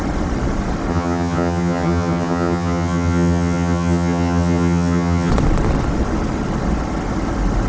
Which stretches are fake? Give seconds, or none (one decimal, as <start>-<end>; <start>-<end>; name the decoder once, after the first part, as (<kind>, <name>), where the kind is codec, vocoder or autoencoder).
0.9-5.3 (vocoder, HiFi-GAN)